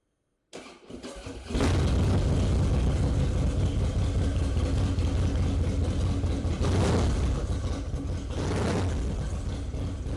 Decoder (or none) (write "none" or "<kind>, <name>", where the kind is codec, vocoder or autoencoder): none